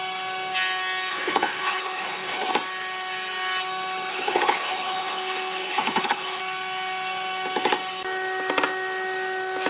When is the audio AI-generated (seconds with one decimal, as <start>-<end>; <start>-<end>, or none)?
1.1-2.5; 4.1-6.4